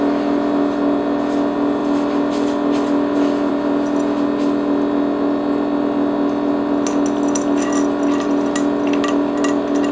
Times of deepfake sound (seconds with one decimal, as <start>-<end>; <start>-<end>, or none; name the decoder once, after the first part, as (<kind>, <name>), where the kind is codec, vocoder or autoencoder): none